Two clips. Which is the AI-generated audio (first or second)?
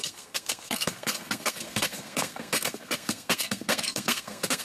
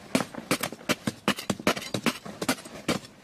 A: first